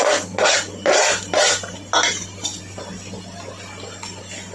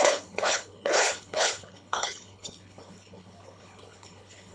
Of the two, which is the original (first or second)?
first